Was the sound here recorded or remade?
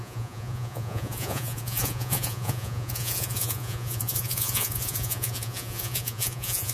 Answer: remade